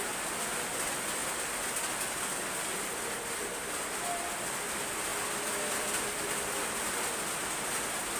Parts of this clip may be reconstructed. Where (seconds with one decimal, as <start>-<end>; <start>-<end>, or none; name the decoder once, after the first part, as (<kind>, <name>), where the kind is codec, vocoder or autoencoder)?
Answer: none